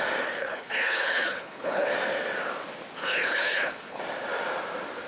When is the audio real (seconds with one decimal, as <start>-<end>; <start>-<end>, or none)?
0.0-0.4; 1.9-3.0; 4.0-5.1